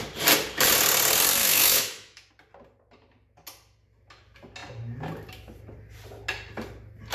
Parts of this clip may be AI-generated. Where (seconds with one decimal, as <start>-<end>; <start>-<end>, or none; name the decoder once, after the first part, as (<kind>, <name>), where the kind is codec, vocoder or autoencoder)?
1.4-2.3 (autoencoder, DAC-VAE)